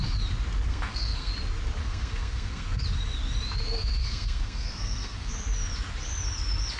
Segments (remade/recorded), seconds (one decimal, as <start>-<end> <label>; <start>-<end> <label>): 0.0-0.7 recorded; 0.7-1.3 remade; 1.3-1.8 recorded; 1.8-2.8 remade; 2.8-4.0 recorded; 4.0-5.3 remade; 5.3-6.8 recorded